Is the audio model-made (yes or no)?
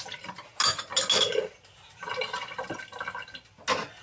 no